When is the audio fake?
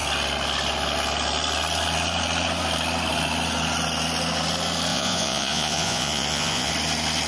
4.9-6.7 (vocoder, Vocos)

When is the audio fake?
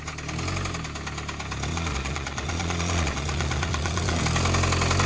1.7-4.2 (vocoder, Vocos)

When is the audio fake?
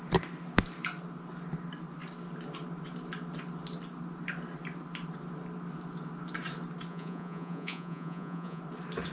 6.9-8.6 (vocoder, Vocos)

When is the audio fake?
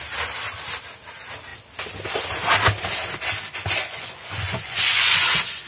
3.8-5.7 (vocoder, Vocos)